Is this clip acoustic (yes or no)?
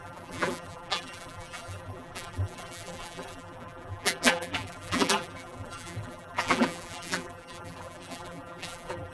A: no